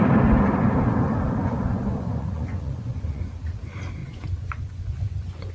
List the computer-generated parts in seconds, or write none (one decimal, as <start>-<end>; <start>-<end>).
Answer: 1.4-3.3; 4.0-5.5